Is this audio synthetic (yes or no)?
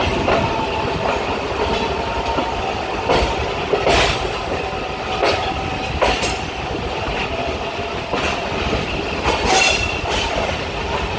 no